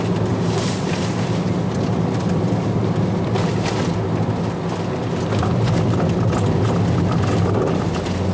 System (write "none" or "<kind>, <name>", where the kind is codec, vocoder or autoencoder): none